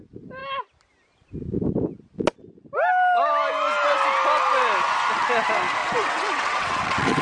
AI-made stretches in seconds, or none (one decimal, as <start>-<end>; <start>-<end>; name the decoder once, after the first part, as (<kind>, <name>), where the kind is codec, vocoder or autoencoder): 5.8-7.2 (vocoder, WaveNeXt)